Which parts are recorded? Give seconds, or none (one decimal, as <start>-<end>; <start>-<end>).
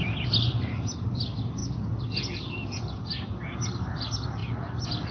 0.0-5.1